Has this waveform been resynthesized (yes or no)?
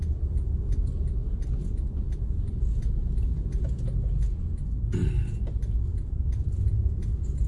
no